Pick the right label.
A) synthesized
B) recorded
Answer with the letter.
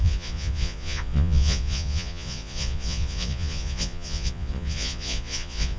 A